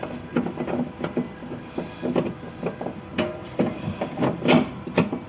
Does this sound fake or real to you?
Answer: real